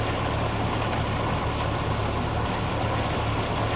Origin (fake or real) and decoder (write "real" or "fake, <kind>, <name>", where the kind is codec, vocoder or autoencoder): real